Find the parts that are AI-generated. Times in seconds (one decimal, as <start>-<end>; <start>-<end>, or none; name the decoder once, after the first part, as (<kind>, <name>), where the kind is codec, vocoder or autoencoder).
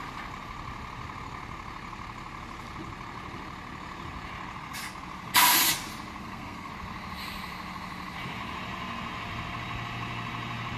6.2-6.7 (codec, SNAC)